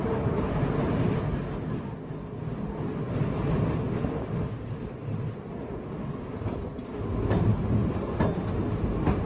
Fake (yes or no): no